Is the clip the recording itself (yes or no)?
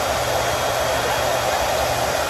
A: yes